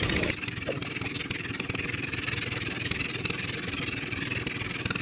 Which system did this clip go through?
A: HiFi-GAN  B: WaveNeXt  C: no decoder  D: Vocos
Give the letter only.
C